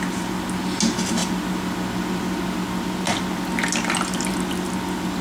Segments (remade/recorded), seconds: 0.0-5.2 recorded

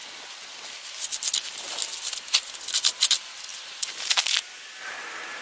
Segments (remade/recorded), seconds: 0.0-3.5 recorded; 3.5-4.1 remade; 4.1-5.4 recorded

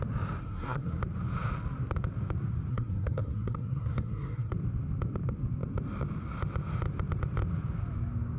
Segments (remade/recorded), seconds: 0.0-0.4 recorded; 0.4-1.0 remade; 1.0-2.7 recorded; 2.7-4.5 remade; 4.5-8.4 recorded

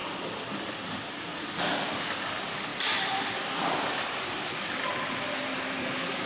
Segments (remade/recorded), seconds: 0.0-0.6 recorded; 0.6-1.3 remade; 1.3-2.0 recorded; 2.0-6.3 remade

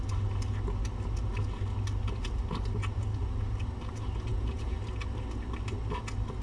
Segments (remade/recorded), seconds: 0.0-4.3 recorded; 4.3-4.8 remade; 4.8-6.4 recorded

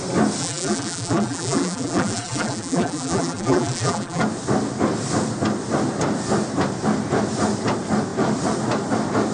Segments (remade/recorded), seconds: 0.0-0.4 recorded; 0.4-4.2 remade; 4.2-9.3 recorded

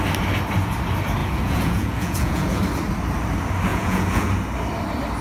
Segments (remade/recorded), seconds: 0.0-1.2 recorded; 1.2-2.6 remade; 2.6-3.7 recorded; 3.7-4.3 remade; 4.3-5.2 recorded

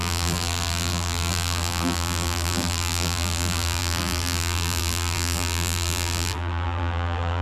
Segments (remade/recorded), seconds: 0.0-7.4 remade